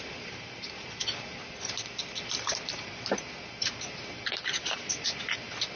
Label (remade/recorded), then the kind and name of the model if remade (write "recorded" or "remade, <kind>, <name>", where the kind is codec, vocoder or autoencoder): remade, vocoder, BigVGAN v2